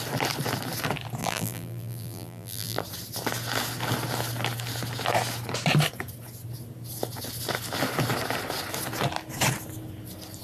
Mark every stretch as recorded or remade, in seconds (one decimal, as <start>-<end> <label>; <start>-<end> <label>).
0.0-1.2 recorded; 1.2-2.8 remade; 2.8-10.4 recorded